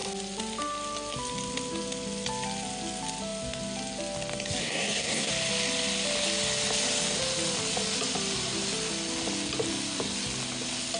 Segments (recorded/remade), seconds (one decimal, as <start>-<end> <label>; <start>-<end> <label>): 0.0-4.6 recorded; 4.6-5.3 remade; 5.3-11.0 recorded